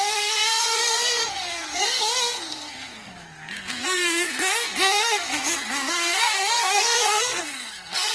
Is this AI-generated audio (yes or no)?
yes